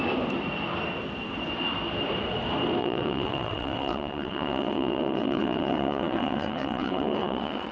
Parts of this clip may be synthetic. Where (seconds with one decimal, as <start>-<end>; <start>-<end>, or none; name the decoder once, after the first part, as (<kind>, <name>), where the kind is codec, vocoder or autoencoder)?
2.8-7.7 (vocoder, WaveNeXt)